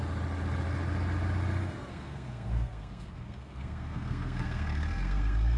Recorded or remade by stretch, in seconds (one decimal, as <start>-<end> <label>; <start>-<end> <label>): 0.0-1.9 recorded; 1.9-5.6 remade